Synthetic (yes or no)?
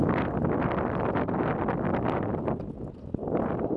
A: no